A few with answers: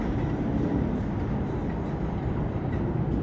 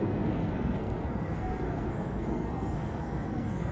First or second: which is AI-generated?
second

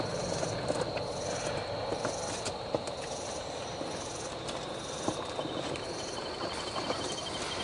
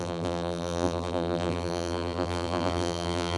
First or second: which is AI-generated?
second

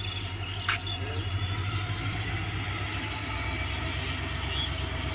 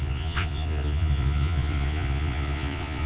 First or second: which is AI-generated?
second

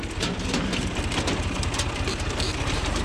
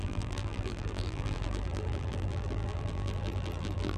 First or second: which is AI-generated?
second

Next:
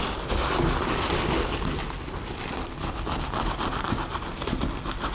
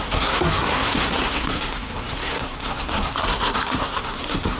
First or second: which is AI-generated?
second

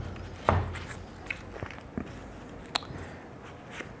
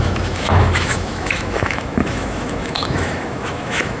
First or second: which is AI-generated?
second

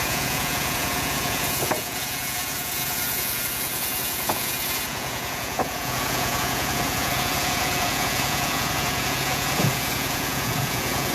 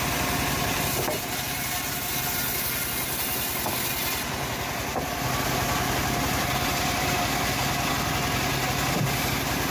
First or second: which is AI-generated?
first